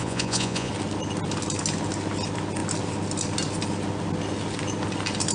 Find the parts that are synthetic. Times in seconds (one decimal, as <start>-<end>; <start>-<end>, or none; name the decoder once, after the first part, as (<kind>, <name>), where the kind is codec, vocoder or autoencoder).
0.0-0.7 (vocoder, Vocos)